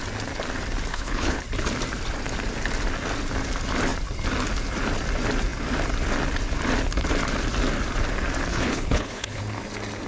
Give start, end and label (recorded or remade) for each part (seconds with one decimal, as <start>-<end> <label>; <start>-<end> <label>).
0.0-0.9 recorded; 0.9-1.4 remade; 1.4-8.5 recorded; 8.5-9.4 remade; 9.4-10.1 recorded